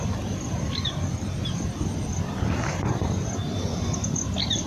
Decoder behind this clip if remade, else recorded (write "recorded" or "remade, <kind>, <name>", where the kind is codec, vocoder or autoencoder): remade, vocoder, BigVGAN v2